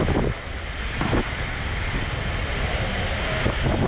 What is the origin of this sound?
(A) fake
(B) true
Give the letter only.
B